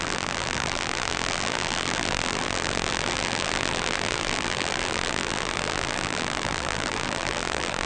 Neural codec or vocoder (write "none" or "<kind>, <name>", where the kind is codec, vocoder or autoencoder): vocoder, BigVGAN v2